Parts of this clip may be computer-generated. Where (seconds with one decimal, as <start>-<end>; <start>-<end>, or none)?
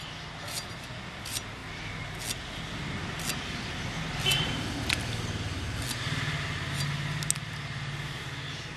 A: none